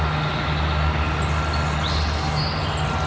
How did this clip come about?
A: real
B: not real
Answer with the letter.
A